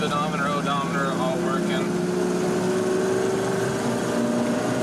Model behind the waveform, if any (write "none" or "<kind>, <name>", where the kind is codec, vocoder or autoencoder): none